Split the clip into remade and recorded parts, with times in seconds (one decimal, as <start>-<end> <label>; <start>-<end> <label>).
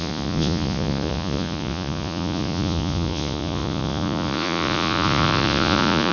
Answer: 0.0-6.1 remade